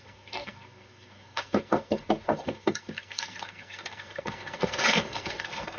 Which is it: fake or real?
fake